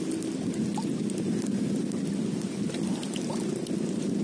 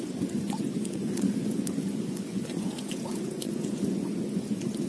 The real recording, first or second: first